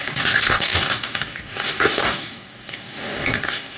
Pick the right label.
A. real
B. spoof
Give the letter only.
B